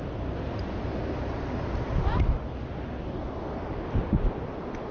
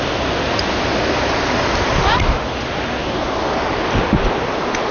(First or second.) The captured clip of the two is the second